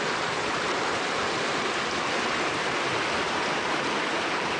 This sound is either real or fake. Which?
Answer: real